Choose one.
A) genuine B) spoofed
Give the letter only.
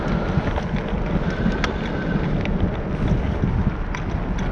A